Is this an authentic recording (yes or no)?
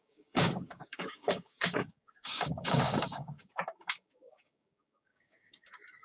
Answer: no